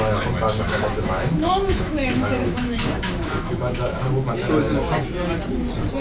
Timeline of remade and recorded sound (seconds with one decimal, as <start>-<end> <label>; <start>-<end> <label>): 0.0-0.5 recorded; 0.5-4.1 remade; 4.1-6.0 recorded